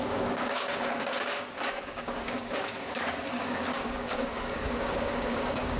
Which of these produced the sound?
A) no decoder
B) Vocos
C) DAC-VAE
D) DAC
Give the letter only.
D